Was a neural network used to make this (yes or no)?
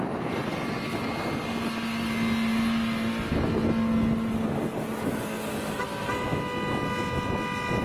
no